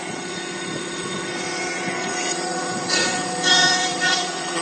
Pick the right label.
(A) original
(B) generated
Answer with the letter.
B